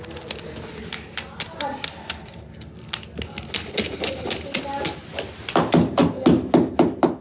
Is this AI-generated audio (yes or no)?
no